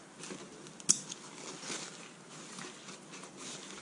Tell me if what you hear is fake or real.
real